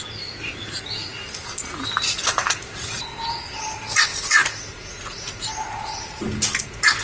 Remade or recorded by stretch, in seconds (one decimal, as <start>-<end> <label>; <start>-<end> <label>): 0.0-7.0 recorded